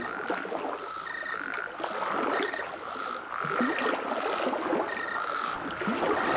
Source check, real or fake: real